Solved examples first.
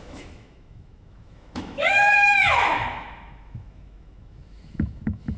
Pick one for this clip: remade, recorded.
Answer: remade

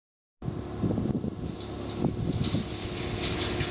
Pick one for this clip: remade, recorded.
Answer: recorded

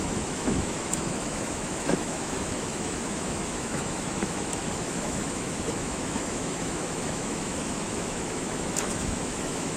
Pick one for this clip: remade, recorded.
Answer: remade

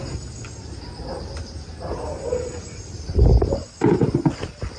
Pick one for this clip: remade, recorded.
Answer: recorded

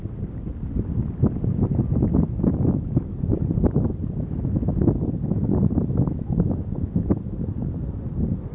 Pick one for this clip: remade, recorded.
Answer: recorded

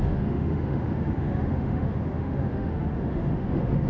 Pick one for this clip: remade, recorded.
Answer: remade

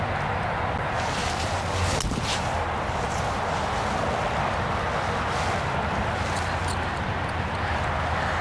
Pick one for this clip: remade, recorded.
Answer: recorded